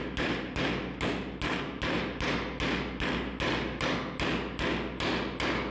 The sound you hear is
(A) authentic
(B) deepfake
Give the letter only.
A